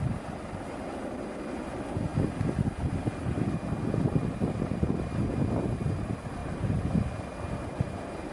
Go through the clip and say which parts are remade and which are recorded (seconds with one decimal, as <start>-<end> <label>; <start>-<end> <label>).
0.0-6.4 recorded; 6.4-6.9 remade; 6.9-8.3 recorded